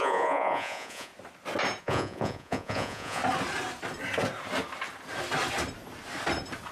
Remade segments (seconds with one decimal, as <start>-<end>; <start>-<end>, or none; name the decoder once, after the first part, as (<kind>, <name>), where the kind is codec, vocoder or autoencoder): 0.0-1.1 (vocoder, Vocos); 1.8-3.2